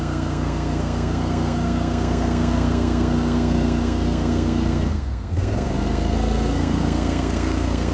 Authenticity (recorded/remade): remade